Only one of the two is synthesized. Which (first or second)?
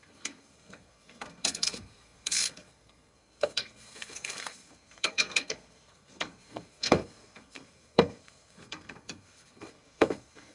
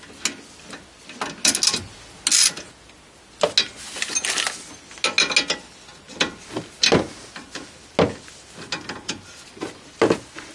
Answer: first